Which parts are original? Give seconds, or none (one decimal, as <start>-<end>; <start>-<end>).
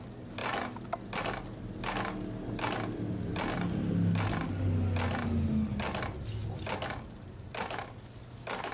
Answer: 0.0-8.7